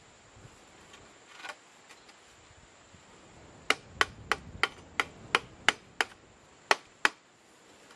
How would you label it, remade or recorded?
recorded